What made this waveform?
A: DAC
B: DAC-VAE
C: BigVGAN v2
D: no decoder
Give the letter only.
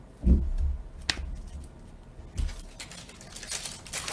D